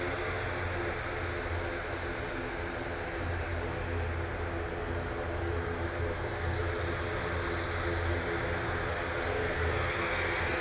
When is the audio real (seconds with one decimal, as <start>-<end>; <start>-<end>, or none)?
0.0-6.1; 6.6-9.3